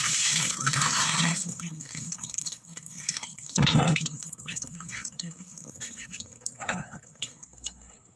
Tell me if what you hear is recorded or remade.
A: remade